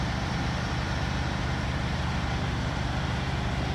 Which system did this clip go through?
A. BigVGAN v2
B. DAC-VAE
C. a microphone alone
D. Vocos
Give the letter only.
A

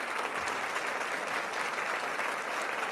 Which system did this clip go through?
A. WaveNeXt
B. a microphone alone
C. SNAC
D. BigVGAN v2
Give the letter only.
B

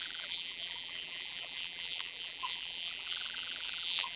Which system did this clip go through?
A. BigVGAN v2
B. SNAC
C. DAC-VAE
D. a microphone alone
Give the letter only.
A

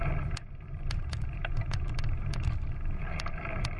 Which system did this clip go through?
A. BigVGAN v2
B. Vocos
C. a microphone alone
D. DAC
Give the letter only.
A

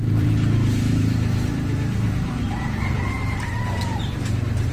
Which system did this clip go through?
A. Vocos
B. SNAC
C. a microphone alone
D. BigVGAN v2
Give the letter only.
D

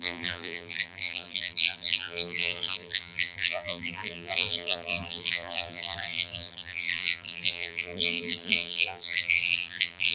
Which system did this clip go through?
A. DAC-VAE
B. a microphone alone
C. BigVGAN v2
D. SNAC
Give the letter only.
C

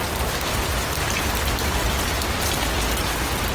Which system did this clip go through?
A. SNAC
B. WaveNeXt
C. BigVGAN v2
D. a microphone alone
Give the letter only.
D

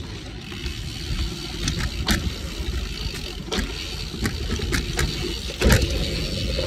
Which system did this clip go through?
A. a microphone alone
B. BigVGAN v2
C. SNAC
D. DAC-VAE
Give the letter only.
A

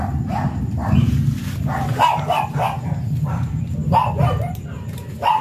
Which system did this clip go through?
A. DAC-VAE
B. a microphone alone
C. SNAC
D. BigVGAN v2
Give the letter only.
B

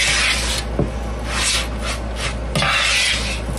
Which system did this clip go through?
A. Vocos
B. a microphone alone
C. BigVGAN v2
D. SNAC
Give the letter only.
B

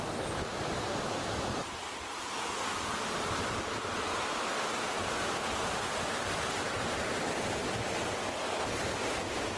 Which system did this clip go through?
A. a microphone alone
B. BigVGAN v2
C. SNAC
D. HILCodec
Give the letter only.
A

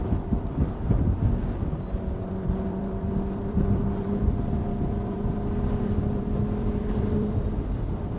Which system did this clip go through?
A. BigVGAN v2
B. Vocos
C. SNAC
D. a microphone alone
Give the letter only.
A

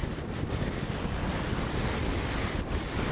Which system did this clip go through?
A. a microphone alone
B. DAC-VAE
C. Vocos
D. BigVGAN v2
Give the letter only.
D